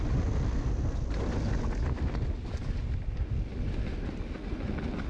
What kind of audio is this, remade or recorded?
recorded